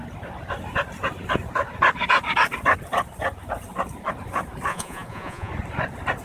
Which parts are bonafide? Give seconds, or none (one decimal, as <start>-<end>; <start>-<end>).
0.0-4.7; 5.5-6.2